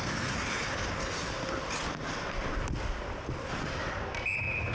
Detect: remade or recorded recorded